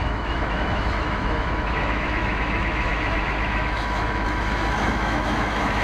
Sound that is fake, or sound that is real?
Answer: fake